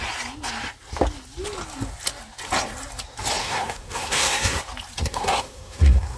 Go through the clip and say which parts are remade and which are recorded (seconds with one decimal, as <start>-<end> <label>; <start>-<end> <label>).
0.0-3.4 recorded; 3.4-4.6 remade; 4.6-5.0 recorded; 5.0-6.2 remade